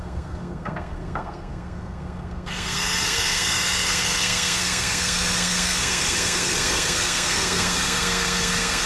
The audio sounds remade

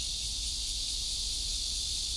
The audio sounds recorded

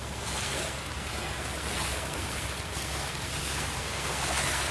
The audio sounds remade